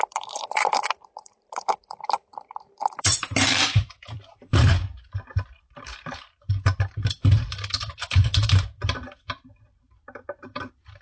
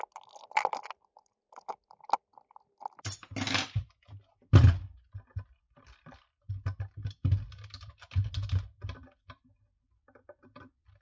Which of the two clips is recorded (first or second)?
second